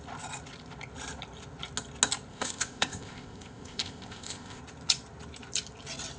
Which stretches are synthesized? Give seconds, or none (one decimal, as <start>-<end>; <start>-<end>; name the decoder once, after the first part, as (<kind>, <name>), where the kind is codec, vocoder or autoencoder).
2.3-4.6 (codec, ZipCodec)